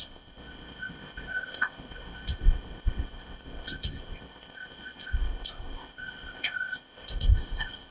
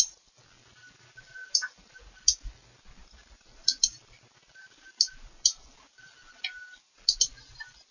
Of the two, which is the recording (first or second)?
second